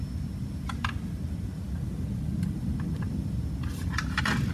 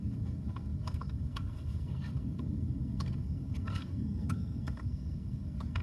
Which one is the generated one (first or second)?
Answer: second